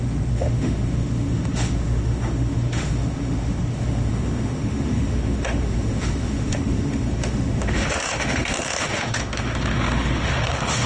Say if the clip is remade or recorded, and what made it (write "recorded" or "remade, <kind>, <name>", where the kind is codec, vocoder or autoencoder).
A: remade, autoencoder, DAC-VAE